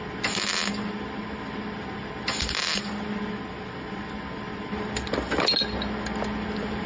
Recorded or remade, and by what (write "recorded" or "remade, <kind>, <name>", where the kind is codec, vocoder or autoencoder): recorded